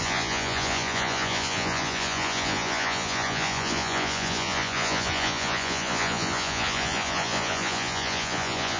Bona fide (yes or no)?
no